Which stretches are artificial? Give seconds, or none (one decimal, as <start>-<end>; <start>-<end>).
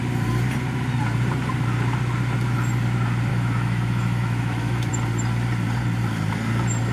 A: 3.3-4.9